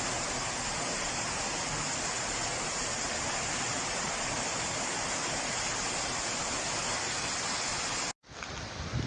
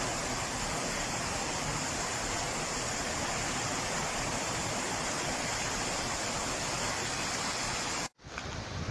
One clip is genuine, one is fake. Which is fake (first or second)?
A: second